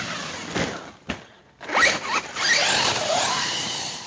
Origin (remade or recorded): recorded